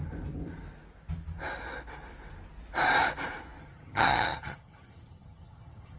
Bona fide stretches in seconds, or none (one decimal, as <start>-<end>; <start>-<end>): 0.0-3.6